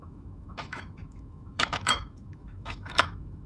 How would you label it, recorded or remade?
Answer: remade